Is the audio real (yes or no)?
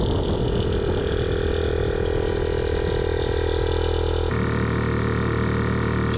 yes